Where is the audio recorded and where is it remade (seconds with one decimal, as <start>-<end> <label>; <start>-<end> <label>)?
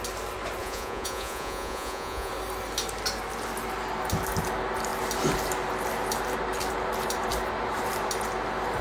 0.0-0.6 recorded; 0.6-2.3 remade; 2.3-8.8 recorded